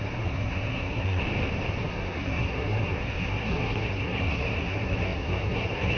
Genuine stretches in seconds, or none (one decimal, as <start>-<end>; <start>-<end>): 1.2-1.8